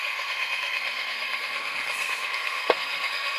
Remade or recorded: remade